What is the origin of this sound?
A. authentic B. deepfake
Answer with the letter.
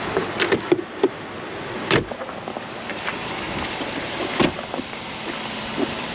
A